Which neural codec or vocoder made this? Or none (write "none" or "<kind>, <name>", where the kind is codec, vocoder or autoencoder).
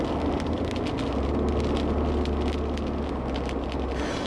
none